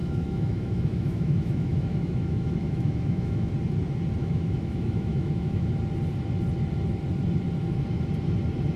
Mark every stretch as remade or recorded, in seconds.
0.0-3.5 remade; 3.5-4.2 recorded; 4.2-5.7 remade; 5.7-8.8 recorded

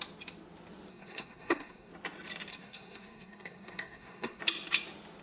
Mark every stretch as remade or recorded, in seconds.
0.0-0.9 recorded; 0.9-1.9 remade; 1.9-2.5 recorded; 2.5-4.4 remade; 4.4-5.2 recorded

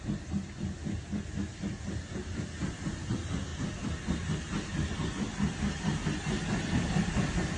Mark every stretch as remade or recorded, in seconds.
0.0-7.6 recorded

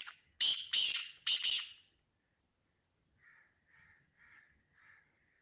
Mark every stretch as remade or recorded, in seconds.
0.0-5.4 recorded

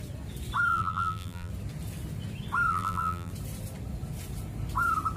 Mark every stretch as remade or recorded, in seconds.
0.0-0.7 recorded; 0.7-1.5 remade; 1.5-2.7 recorded; 2.7-3.3 remade; 3.3-5.2 recorded

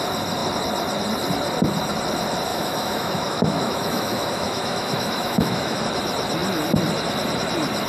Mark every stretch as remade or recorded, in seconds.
0.0-2.5 recorded; 2.5-5.8 remade; 5.8-7.9 recorded

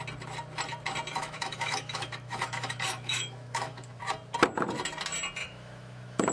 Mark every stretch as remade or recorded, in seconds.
0.0-1.1 recorded; 1.1-4.0 remade; 4.0-5.4 recorded; 5.4-6.3 remade